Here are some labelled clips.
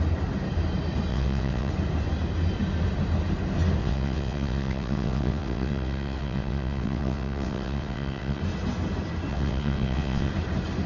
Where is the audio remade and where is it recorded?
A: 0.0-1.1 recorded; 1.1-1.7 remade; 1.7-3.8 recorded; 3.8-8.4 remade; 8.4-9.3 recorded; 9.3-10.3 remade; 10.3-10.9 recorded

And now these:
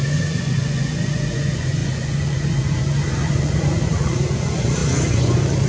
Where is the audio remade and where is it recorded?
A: 0.0-5.7 remade

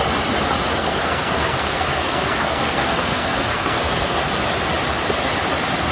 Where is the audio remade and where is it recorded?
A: 0.0-0.8 recorded; 0.8-4.3 remade; 4.3-5.9 recorded

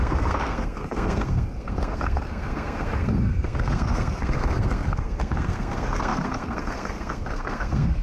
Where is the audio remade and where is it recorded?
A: 0.0-8.0 remade

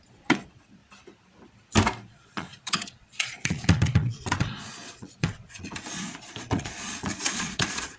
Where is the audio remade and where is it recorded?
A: 0.0-0.8 remade; 0.8-2.1 recorded; 2.1-8.0 remade

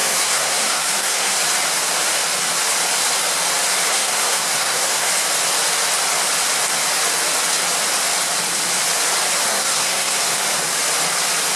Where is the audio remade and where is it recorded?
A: 0.0-1.4 remade; 1.4-3.9 recorded; 3.9-5.1 remade; 5.1-9.5 recorded; 9.5-10.2 remade; 10.2-11.6 recorded